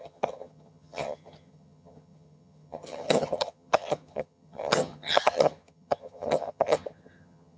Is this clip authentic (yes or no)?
no